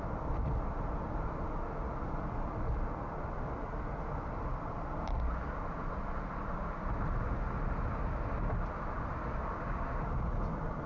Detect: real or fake real